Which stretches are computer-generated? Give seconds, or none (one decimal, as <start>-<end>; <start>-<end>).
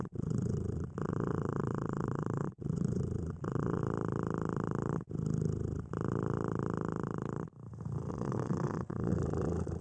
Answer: 0.0-3.8; 8.1-9.8